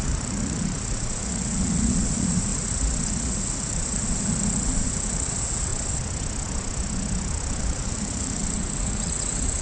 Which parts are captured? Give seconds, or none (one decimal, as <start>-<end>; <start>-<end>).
5.7-7.6

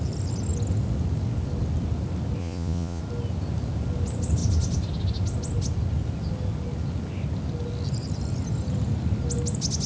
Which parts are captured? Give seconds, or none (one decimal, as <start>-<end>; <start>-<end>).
0.0-2.4; 3.0-9.9

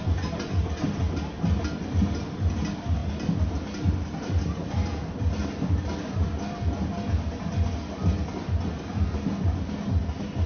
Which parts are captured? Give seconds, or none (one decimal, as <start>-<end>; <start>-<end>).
0.0-10.5

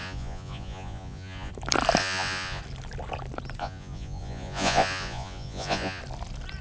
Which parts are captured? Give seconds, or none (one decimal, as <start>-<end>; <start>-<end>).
1.5-2.0; 2.6-3.6; 6.0-6.6

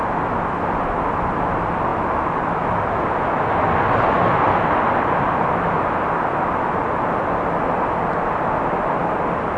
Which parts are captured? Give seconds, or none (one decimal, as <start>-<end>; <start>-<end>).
0.0-9.6